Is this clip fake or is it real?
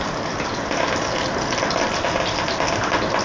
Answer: real